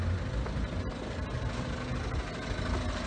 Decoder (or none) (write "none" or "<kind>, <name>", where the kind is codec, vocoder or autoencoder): none